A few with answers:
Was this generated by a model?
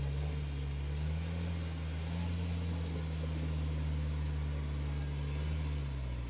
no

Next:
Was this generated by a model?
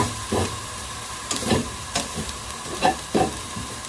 yes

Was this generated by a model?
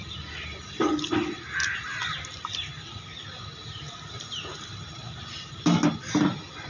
no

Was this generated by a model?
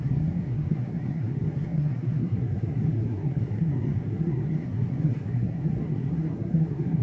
yes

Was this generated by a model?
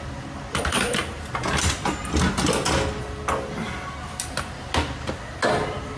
no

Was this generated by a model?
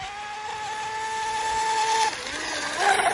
no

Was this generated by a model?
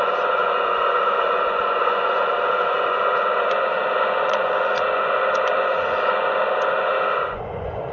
yes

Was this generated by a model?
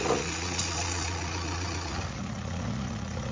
yes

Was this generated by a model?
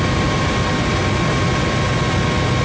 no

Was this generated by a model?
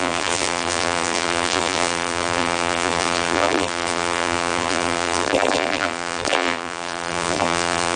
yes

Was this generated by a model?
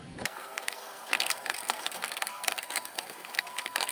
yes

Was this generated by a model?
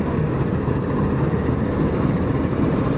no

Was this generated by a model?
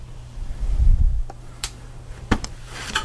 yes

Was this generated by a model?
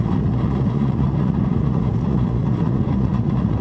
yes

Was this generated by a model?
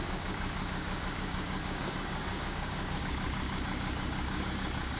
yes